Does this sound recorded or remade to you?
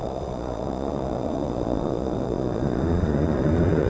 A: remade